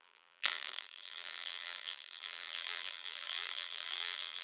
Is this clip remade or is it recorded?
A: remade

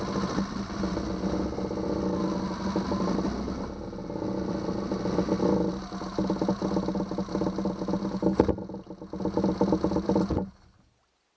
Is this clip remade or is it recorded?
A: recorded